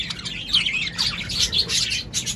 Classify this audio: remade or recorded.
recorded